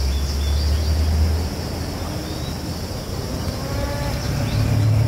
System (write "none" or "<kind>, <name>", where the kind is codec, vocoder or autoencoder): none